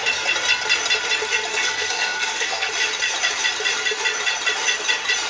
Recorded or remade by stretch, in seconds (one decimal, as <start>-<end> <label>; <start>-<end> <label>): 0.0-1.5 recorded; 1.5-2.7 remade; 2.7-5.3 recorded